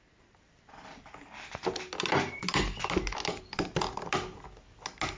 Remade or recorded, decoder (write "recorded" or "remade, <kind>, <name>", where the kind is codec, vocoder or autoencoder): recorded